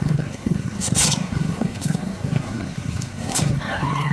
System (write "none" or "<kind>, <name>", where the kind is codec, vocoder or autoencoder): codec, SNAC